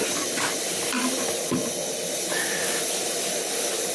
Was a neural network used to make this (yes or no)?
yes